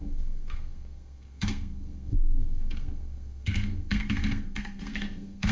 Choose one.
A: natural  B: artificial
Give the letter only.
B